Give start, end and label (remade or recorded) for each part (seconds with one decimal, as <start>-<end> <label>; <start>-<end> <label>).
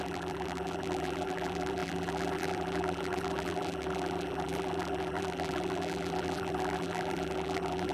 0.0-7.9 remade